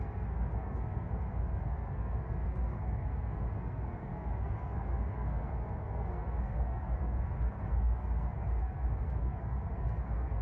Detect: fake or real fake